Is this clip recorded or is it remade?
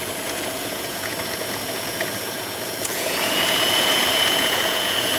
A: remade